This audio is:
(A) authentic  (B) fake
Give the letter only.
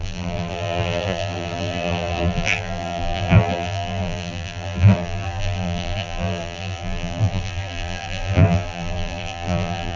B